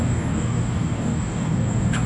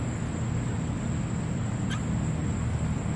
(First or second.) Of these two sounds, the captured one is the second